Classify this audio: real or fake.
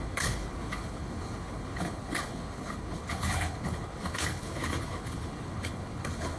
fake